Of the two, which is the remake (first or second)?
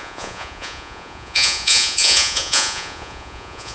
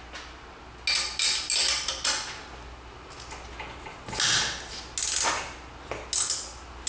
first